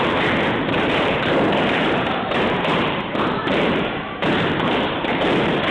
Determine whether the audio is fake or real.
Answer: fake